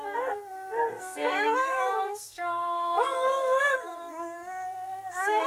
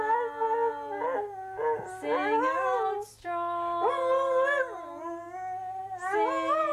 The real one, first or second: second